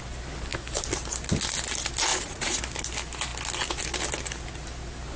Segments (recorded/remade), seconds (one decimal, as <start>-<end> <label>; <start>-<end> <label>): 0.0-2.1 recorded; 2.1-2.6 remade; 2.6-5.2 recorded

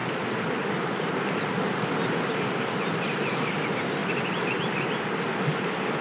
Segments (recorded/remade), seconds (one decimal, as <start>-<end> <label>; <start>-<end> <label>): 0.0-6.0 recorded

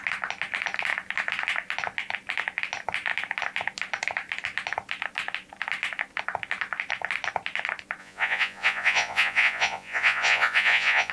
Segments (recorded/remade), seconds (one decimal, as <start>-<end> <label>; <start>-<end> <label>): 0.0-8.0 recorded; 8.0-11.1 remade

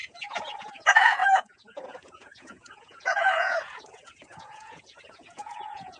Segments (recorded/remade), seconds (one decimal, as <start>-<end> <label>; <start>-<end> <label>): 0.0-6.0 remade

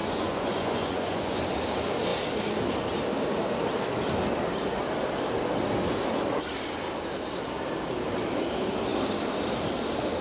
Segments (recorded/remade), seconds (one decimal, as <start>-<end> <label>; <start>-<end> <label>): 0.0-1.4 remade; 1.4-10.2 recorded